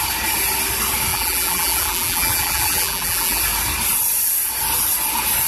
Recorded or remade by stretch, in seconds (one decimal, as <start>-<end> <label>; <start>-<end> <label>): 0.0-1.1 recorded; 1.1-3.4 remade; 3.4-5.5 recorded